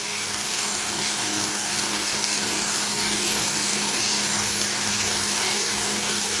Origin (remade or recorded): remade